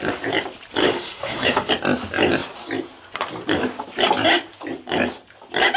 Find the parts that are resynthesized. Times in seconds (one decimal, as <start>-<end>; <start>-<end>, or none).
0.8-1.7

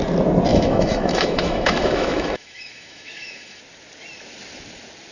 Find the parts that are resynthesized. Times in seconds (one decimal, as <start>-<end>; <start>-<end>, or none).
0.5-3.6

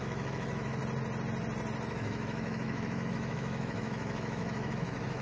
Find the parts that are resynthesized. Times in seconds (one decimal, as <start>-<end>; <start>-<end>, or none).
0.0-0.8; 1.9-5.2

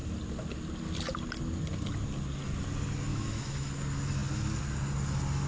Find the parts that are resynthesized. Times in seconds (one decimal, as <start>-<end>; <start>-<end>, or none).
3.1-3.7

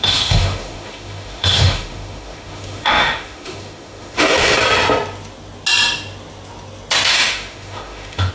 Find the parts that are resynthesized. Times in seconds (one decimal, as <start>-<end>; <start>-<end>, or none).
0.0-4.6; 7.1-8.3

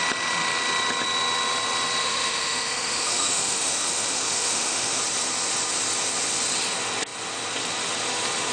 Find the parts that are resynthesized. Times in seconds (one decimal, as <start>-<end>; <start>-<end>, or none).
2.0-5.0